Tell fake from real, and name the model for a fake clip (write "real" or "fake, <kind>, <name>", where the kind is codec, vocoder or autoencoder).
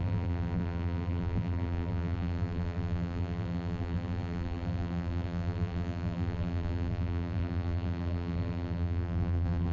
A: fake, vocoder, BigVGAN v2